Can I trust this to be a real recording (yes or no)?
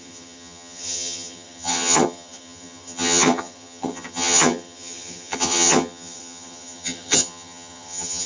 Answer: no